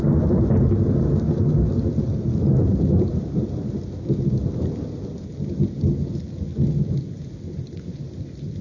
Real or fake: real